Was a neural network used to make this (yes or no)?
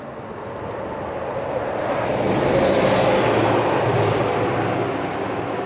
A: no